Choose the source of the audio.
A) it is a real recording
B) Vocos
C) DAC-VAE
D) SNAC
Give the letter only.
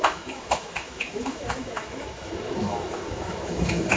C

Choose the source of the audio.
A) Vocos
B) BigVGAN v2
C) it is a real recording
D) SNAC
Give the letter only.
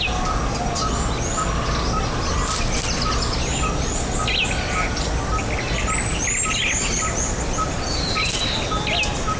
C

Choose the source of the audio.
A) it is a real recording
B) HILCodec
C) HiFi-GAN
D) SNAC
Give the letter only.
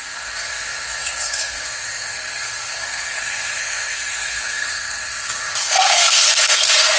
D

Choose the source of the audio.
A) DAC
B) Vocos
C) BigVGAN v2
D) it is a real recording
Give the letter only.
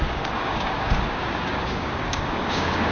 A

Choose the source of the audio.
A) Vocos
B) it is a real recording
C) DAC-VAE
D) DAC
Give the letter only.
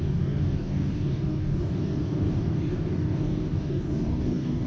D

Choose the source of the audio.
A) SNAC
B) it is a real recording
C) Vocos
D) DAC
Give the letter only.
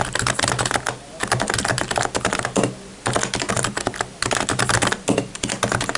B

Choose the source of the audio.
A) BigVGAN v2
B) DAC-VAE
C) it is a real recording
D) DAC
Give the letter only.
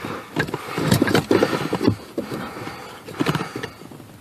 C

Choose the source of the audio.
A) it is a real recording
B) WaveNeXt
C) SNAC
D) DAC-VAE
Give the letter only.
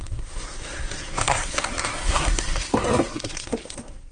C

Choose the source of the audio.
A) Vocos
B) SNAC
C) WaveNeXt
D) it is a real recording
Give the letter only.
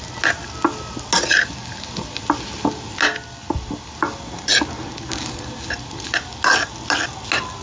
D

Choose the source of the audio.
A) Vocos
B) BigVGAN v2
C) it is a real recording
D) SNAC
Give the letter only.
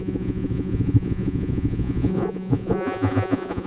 A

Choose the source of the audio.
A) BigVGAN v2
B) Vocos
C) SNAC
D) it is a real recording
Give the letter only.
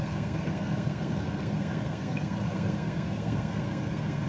C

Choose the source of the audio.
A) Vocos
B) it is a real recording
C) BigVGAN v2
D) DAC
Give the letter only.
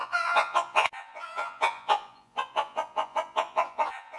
A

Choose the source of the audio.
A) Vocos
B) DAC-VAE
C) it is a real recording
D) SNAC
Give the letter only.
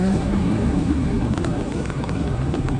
D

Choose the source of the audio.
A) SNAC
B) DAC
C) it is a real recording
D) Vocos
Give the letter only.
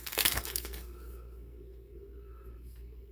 A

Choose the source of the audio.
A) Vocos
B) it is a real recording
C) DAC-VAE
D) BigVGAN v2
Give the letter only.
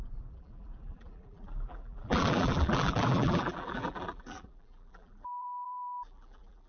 D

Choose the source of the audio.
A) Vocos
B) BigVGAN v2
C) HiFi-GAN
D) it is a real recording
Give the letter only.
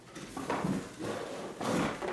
D